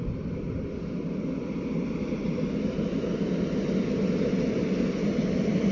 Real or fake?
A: real